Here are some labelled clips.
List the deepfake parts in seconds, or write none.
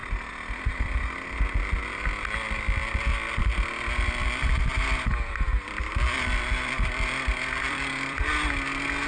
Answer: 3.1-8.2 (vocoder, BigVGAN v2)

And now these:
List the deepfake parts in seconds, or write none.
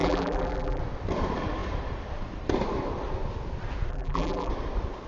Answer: 0.0-0.8 (vocoder, BigVGAN v2); 3.9-4.5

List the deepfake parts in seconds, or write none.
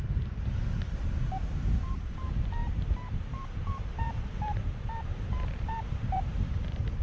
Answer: 1.0-1.7 (vocoder, BigVGAN v2); 2.6-7.0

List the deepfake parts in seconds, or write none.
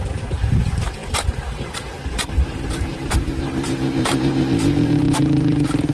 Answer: 0.0-5.9 (vocoder, BigVGAN v2)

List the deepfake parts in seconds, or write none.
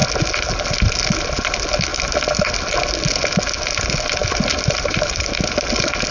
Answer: 1.9-2.8 (vocoder, BigVGAN v2); 4.2-6.1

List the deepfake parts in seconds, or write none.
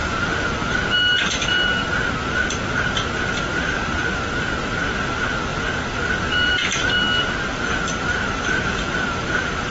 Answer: 7.5-9.7 (vocoder, BigVGAN v2)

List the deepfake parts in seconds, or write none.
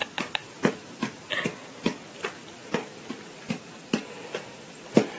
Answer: 0.0-0.4 (vocoder, BigVGAN v2); 3.5-5.2